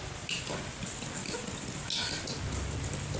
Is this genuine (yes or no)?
yes